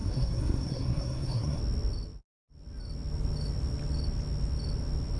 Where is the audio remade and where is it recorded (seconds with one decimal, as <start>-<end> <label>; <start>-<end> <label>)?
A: 0.0-1.6 remade; 1.6-5.2 recorded

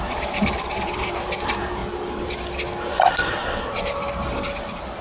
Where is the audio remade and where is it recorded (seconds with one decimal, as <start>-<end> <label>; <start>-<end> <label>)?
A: 0.0-1.8 remade; 1.8-5.0 recorded

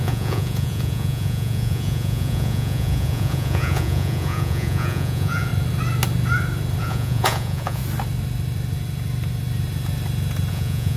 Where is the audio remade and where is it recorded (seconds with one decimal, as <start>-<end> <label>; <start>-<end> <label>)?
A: 0.0-5.5 remade; 5.5-6.8 recorded; 6.8-7.8 remade; 7.8-10.5 recorded; 10.5-11.0 remade

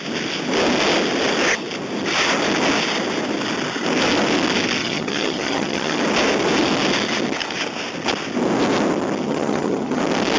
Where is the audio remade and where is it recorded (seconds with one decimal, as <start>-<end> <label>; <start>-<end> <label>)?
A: 0.0-4.8 recorded; 4.8-6.0 remade; 6.0-9.2 recorded; 9.2-10.0 remade; 10.0-10.4 recorded

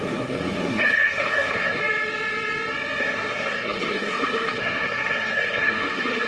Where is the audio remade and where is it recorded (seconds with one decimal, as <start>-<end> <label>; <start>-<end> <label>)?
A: 0.0-1.8 remade; 1.8-3.0 recorded; 3.0-6.3 remade

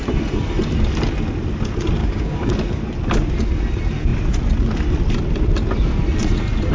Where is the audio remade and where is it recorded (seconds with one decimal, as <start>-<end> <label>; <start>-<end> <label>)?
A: 0.0-2.0 recorded; 2.0-2.5 remade; 2.5-6.7 recorded

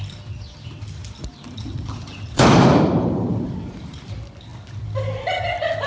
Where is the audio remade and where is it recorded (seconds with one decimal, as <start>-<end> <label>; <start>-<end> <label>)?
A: 0.0-4.5 remade; 4.5-5.9 recorded